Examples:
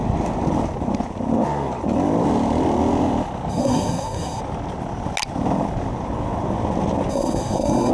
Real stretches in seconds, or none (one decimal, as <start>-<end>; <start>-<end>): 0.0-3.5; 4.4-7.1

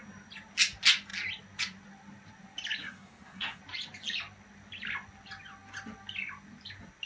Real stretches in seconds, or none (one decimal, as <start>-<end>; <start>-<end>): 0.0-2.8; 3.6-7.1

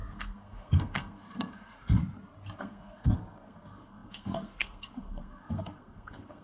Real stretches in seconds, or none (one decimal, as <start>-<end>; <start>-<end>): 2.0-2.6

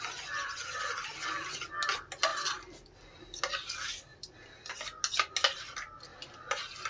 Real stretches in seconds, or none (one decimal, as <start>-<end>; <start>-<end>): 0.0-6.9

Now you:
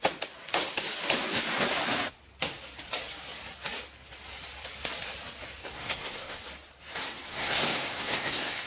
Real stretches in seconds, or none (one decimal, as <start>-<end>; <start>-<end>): 0.0-5.6; 6.4-7.3

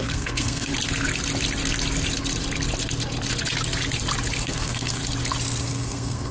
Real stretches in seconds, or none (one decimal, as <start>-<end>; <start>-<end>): 0.7-4.4; 5.0-5.6

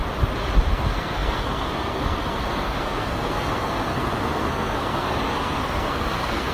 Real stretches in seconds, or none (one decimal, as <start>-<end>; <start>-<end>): 0.0-0.7

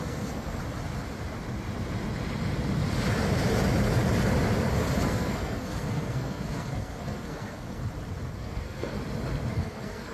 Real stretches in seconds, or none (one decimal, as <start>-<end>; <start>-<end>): 0.6-5.0; 7.8-8.3; 9.0-9.5